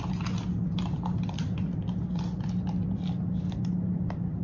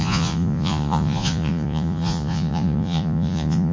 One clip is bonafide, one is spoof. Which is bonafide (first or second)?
first